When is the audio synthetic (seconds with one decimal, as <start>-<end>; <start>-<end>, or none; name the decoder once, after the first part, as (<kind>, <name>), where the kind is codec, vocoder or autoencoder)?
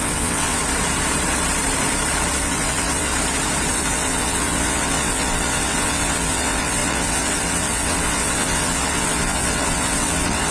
0.0-0.6 (vocoder, WaveNeXt); 2.4-3.1; 3.7-10.5